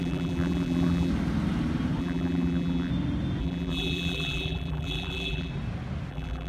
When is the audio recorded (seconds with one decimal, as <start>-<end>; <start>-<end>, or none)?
1.1-2.0; 2.9-3.4; 5.5-6.1